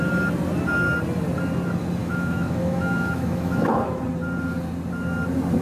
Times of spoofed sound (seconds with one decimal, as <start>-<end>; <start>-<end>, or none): 2.0-4.0